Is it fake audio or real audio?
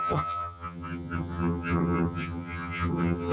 fake